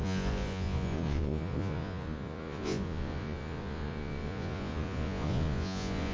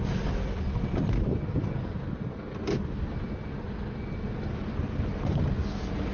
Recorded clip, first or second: second